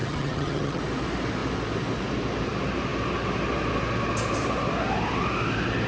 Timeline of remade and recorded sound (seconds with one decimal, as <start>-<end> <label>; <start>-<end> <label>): 0.0-0.8 remade; 0.8-5.9 recorded